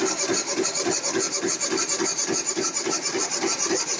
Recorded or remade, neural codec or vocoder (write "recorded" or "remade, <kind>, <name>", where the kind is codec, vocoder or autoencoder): recorded